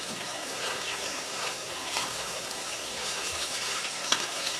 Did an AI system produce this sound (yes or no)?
yes